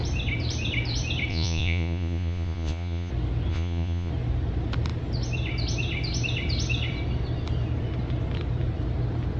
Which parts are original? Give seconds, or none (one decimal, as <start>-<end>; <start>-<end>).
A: 0.0-1.3; 3.1-3.5; 4.1-9.4